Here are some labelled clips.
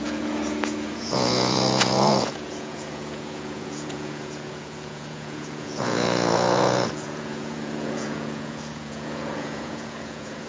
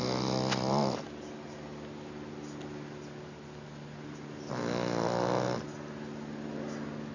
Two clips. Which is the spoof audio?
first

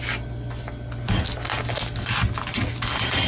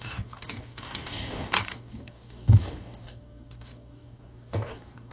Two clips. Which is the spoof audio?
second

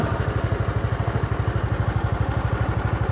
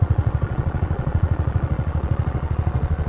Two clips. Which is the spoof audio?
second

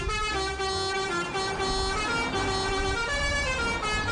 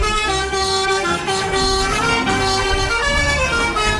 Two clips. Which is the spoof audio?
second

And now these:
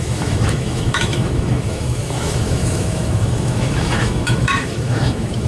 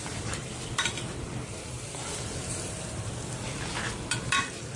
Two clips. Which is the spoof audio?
first